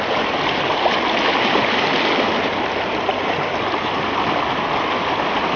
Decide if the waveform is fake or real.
real